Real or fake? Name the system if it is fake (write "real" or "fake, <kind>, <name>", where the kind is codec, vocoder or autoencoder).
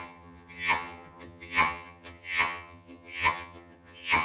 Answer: fake, vocoder, HiFi-GAN